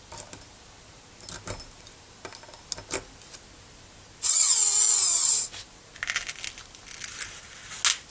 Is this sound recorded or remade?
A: recorded